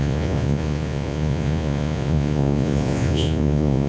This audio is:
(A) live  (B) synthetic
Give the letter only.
B